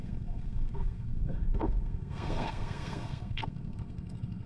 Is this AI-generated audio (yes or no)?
yes